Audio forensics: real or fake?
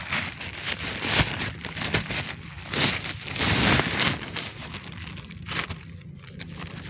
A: real